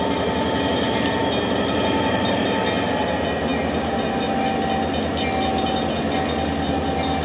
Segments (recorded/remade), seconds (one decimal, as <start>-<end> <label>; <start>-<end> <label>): 0.0-7.2 recorded